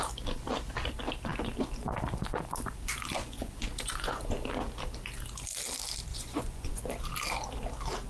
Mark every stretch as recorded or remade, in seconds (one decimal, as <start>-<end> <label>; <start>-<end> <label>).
0.0-3.2 recorded; 3.2-4.2 remade; 4.2-6.1 recorded; 6.1-6.8 remade; 6.8-8.1 recorded